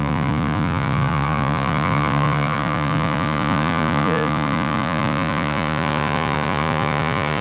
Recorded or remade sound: remade